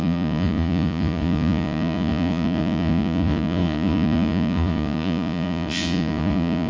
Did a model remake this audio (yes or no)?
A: yes